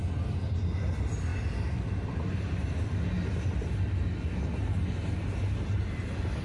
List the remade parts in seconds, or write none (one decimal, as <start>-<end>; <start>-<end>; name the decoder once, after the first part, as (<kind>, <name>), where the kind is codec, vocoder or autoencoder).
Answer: none

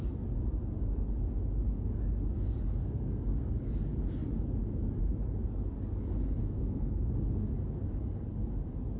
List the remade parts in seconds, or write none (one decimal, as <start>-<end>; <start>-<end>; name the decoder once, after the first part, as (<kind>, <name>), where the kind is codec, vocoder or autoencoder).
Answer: 2.8-3.5 (codec, SNAC); 6.4-7.1

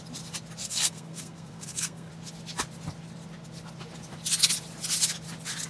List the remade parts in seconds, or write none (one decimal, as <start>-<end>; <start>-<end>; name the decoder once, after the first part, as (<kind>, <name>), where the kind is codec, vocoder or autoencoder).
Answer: 0.6-2.1 (codec, SNAC)

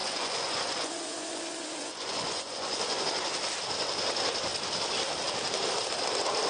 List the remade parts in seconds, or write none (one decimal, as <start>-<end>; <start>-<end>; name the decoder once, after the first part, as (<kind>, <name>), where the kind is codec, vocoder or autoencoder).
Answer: 0.0-3.0 (vocoder, Vocos)

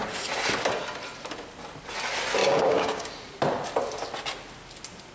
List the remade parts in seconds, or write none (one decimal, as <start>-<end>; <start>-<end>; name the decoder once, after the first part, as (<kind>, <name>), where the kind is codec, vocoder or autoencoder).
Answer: 2.4-3.1 (codec, DAC)

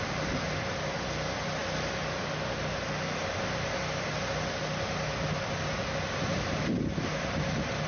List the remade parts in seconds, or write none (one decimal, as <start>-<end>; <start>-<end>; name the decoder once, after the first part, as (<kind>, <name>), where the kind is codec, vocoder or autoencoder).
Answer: none

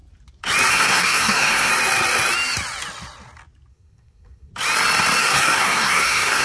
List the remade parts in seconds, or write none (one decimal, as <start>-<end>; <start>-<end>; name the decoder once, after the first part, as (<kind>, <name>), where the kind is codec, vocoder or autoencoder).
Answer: 0.7-1.7 (codec, SNAC); 3.7-4.5; 5.2-6.4

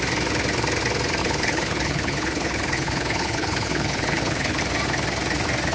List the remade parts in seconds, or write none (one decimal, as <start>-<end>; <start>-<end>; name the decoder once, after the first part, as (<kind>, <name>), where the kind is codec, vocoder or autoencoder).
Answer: 1.2-4.6 (codec, HILCodec)